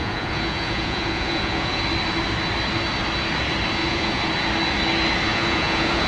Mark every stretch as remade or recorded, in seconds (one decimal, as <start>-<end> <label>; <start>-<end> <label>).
0.0-1.8 remade; 1.8-3.8 recorded; 3.8-4.3 remade; 4.3-5.3 recorded; 5.3-6.1 remade